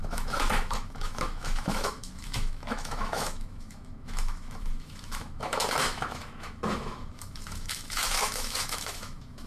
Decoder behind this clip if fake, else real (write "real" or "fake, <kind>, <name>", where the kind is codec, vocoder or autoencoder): fake, autoencoder, DAC-VAE